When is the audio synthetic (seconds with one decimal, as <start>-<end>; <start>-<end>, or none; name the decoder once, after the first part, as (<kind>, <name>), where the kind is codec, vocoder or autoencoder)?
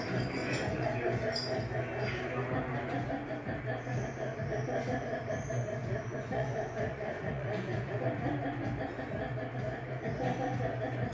0.4-1.2 (vocoder, Vocos); 5.8-8.0